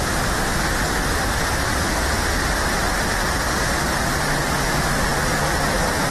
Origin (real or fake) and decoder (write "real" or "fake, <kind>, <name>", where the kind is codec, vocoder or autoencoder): real